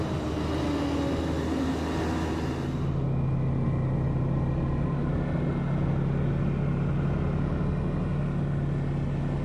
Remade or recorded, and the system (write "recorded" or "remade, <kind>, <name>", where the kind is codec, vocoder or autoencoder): recorded